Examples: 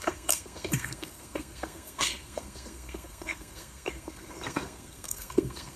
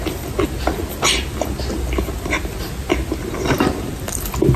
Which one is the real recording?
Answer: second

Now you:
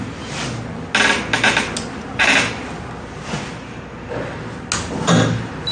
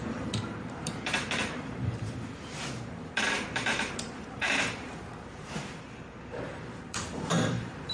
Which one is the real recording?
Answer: first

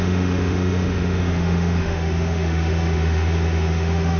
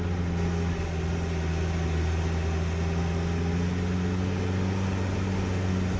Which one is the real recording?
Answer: second